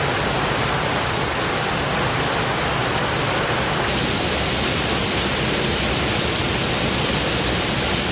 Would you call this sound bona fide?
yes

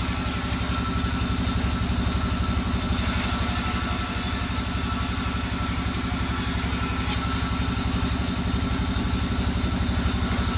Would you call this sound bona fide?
yes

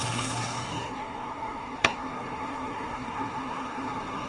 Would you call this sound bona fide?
no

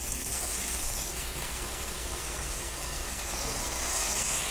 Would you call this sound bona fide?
no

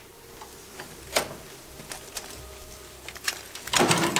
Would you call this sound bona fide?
yes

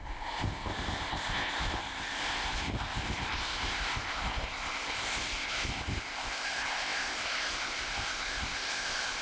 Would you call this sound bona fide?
no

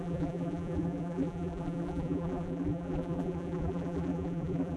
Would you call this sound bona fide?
no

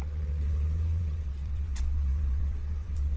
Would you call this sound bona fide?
no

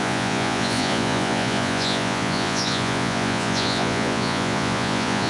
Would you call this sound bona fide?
no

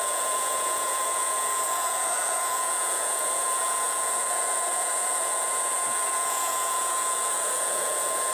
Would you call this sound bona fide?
no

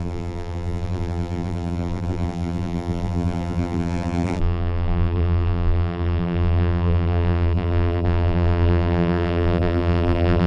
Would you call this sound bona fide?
no